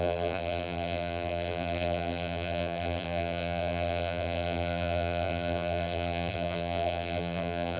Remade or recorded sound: remade